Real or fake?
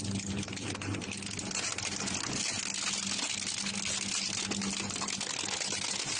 real